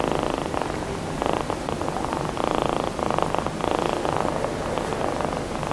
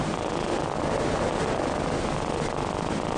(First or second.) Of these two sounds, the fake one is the first